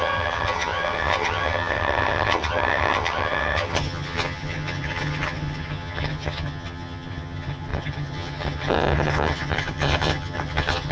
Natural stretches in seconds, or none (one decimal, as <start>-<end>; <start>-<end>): none